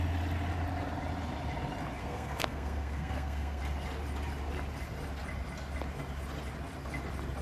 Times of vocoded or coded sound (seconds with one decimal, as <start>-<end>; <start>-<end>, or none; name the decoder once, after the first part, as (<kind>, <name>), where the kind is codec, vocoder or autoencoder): 2.0-3.6 (codec, SNAC)